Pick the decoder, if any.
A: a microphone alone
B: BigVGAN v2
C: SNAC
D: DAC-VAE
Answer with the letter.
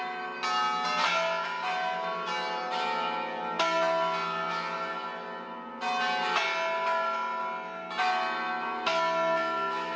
A